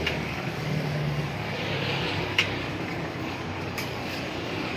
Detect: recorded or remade remade